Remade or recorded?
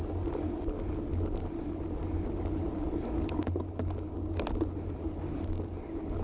recorded